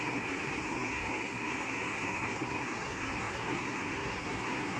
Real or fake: fake